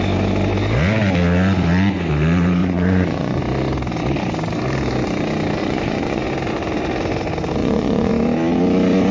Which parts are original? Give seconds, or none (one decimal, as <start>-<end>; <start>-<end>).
0.0-2.6; 3.4-5.6; 6.2-7.6; 8.1-9.1